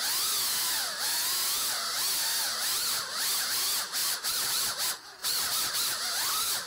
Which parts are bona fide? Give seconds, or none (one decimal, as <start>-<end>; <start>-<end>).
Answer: 0.0-4.0; 4.6-5.2; 6.0-6.7